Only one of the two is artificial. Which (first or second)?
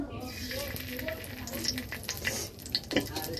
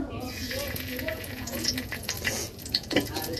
second